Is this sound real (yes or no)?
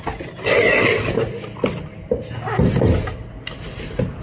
yes